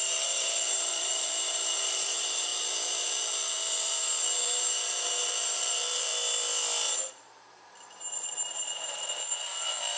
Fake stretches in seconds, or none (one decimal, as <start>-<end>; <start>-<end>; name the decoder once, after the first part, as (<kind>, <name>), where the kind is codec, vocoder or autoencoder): 0.0-6.1 (vocoder, BigVGAN v2); 7.1-10.0